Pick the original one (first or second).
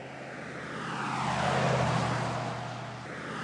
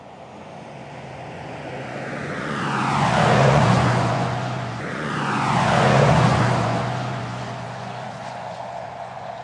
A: first